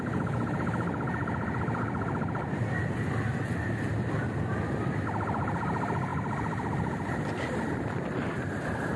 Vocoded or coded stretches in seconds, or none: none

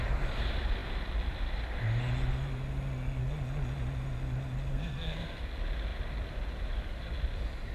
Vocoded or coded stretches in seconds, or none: 4.7-5.4 (codec, SNAC)

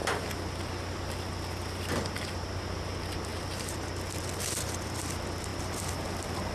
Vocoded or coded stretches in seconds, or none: none

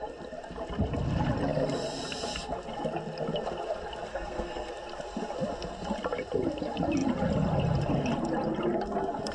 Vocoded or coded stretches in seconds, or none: 4.1-4.7 (codec, SNAC)

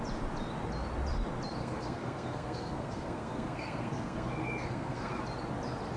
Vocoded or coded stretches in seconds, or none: 1.6-5.2 (codec, SNAC)

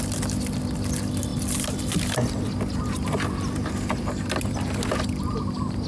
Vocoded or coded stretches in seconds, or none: none

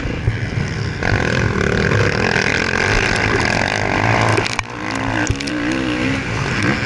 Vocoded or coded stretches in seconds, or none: none